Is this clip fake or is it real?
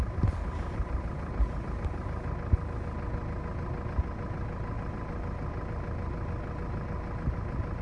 real